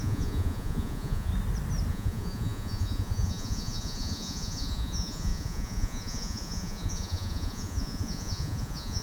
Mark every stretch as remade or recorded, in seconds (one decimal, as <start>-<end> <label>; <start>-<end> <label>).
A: 0.0-1.3 remade; 1.3-1.9 recorded; 1.9-9.0 remade